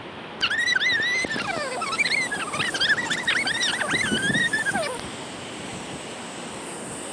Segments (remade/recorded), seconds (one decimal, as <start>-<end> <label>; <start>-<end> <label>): 0.0-7.1 recorded